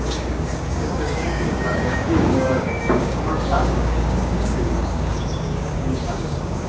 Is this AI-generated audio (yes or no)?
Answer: yes